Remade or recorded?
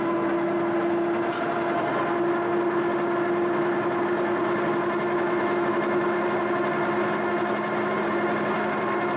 recorded